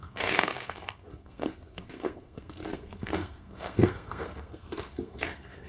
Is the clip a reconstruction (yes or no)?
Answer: yes